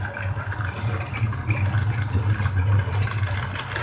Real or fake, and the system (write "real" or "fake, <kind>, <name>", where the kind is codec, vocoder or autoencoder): real